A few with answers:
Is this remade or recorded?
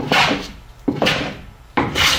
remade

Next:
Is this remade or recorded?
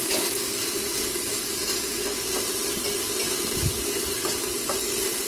recorded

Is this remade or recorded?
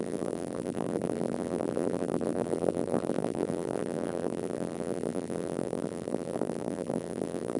remade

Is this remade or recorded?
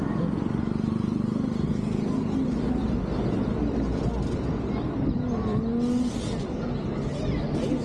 recorded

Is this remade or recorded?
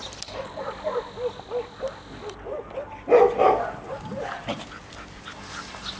recorded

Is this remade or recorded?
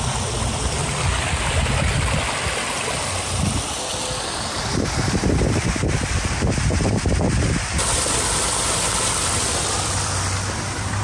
recorded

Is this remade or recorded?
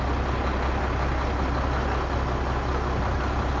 recorded